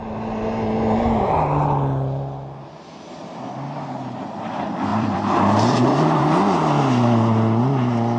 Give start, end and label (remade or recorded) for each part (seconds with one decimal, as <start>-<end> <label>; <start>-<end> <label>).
0.0-4.9 recorded; 4.9-6.4 remade; 6.4-8.2 recorded